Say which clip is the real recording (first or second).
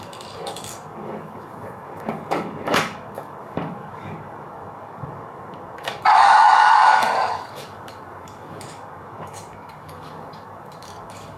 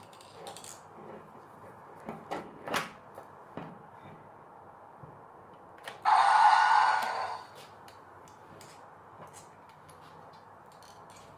second